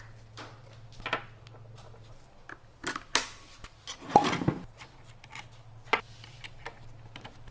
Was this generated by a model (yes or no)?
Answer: no